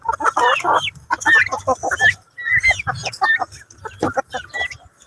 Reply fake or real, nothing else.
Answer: real